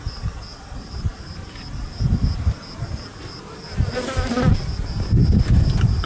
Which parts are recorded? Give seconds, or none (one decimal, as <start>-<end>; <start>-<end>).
0.0-6.1